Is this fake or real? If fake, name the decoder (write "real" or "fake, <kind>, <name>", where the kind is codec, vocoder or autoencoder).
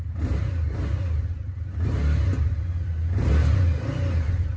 real